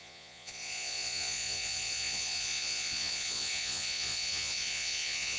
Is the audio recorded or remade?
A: remade